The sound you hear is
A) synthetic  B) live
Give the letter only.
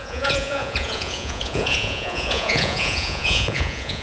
A